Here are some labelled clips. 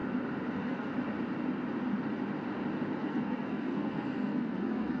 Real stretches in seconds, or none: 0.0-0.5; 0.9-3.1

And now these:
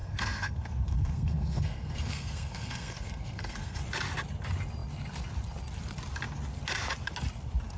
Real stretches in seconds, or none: 3.8-7.8

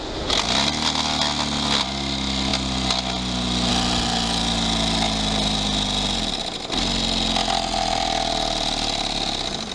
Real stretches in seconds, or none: 0.0-9.7

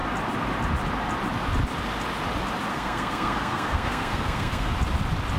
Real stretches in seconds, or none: 0.0-2.7; 4.7-5.4

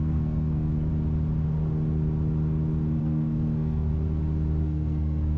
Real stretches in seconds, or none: 0.9-3.0; 3.9-4.6

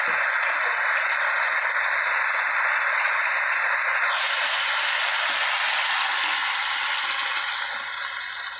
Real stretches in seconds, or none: 0.0-8.6

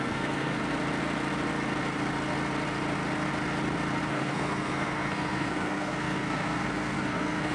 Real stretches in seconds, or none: 0.6-4.1

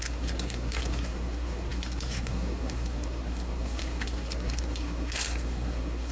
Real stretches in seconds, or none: none